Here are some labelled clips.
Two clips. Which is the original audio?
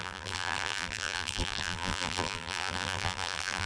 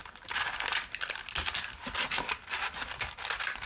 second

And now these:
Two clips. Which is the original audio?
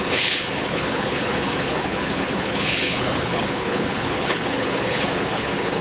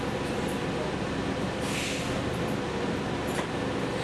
second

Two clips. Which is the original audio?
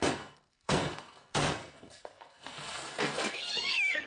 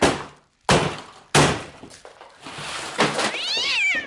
second